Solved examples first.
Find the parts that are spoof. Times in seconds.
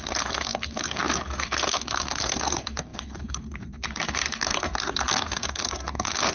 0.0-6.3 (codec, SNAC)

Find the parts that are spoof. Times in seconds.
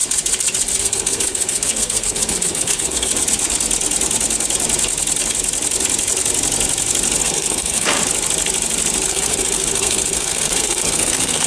0.8-3.1 (codec, SNAC); 7.2-8.0; 9.1-11.5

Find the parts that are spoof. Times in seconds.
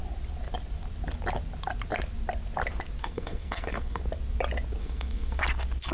3.0-4.0 (codec, SNAC); 4.8-5.4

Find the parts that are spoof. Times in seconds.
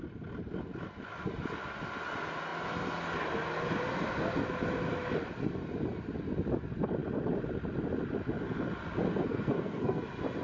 9.1-10.0 (codec, SNAC)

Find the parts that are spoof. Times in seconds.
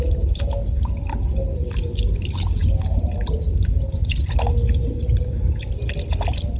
none